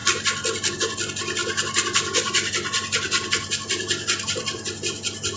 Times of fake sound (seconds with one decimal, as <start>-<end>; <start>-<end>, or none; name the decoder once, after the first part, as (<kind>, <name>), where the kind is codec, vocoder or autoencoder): none